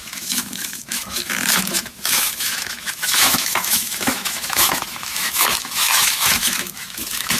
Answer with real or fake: fake